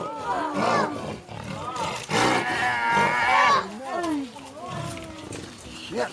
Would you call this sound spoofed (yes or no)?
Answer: no